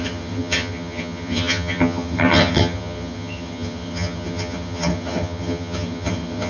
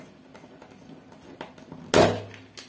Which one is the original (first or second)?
second